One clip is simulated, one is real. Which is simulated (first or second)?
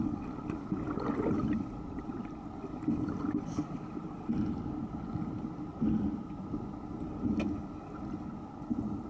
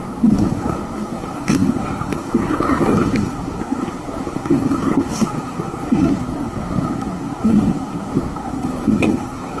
second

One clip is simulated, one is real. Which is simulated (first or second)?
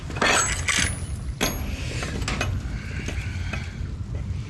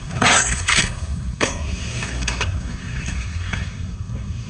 second